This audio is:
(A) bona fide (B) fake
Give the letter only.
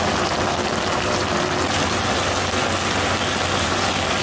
A